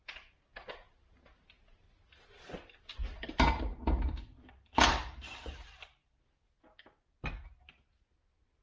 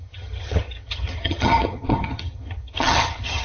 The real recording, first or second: first